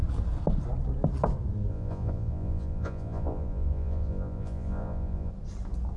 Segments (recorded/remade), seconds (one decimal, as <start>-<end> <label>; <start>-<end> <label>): 0.0-1.7 recorded; 1.7-5.3 remade; 5.3-6.0 recorded